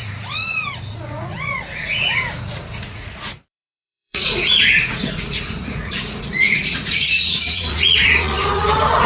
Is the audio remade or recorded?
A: remade